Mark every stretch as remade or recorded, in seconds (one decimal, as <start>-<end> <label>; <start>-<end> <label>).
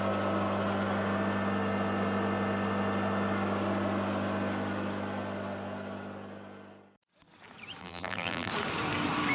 0.0-7.8 recorded; 7.8-8.5 remade; 8.5-9.3 recorded